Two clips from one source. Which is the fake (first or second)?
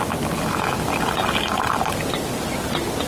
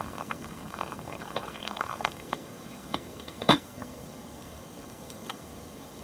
second